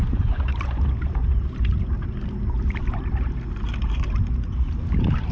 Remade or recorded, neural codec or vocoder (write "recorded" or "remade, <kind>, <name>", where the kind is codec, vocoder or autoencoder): remade, vocoder, BigVGAN v2